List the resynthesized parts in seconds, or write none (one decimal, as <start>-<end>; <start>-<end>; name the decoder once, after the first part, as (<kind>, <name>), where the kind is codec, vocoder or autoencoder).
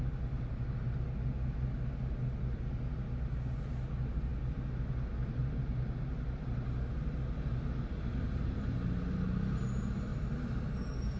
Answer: 8.1-9.0 (vocoder, BigVGAN v2); 10.1-11.2